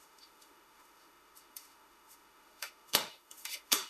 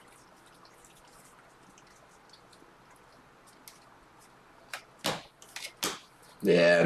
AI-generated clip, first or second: first